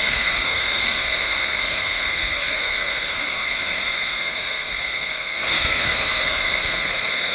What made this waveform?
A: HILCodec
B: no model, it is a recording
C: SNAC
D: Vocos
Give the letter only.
C